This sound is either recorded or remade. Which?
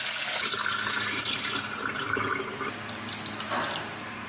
recorded